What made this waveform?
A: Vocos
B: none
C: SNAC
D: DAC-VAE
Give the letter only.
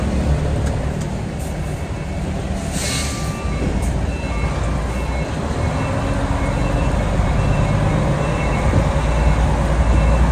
B